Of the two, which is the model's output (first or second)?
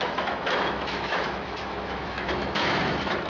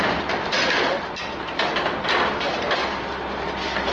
first